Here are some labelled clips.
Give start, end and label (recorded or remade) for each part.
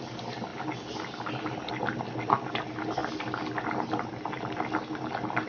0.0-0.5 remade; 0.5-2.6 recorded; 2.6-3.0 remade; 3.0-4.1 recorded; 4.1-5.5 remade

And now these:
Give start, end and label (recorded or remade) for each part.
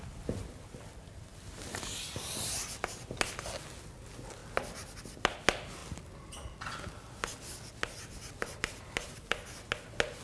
0.0-10.2 recorded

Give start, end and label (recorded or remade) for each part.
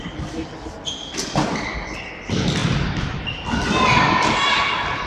0.0-5.1 recorded